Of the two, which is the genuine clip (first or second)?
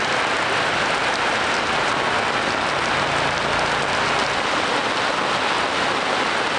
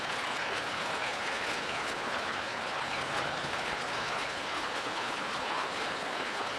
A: first